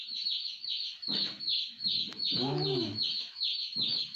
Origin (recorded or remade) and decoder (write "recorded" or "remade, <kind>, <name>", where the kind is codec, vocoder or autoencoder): remade, autoencoder, DAC-VAE